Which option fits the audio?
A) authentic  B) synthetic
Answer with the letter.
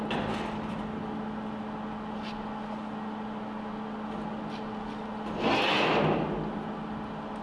A